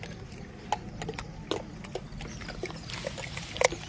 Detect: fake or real real